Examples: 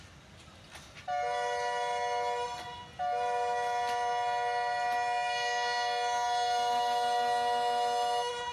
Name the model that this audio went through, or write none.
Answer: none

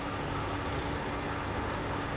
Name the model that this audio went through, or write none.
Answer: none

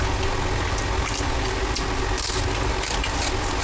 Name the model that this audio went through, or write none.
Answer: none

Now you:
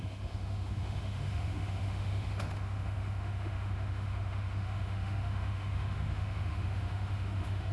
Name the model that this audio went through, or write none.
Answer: autoencoder, DAC-VAE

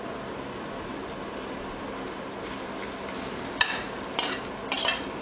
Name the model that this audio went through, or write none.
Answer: none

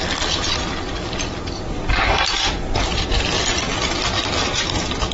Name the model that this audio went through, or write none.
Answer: vocoder, BigVGAN v2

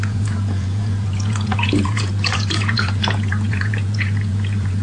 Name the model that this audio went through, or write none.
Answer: vocoder, Vocos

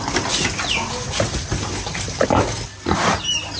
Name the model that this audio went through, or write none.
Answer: none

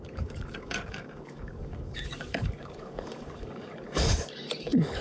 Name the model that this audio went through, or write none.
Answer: codec, DAC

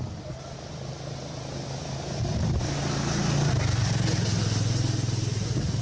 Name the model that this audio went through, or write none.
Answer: none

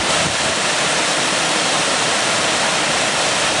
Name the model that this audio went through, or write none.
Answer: none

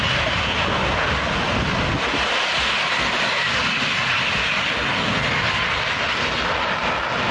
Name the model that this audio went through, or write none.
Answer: none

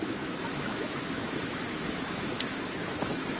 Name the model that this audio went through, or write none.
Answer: autoencoder, DAC-VAE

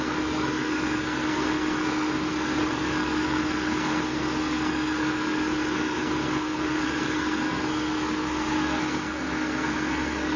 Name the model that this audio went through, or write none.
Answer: codec, SNAC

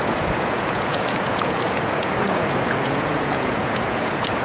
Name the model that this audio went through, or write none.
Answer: vocoder, Vocos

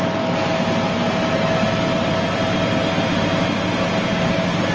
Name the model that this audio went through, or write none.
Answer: none